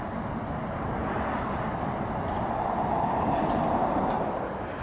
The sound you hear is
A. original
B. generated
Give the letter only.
A